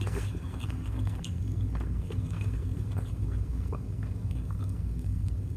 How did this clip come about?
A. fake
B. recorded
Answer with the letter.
A